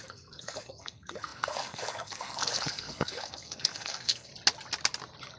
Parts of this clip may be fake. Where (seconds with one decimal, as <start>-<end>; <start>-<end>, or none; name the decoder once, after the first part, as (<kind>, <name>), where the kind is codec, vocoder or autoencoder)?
0.0-4.3 (codec, SNAC)